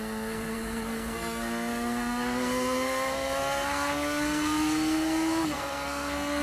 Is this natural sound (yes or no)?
no